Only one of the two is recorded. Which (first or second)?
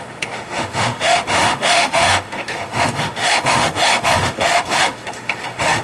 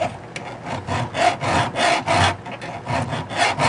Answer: second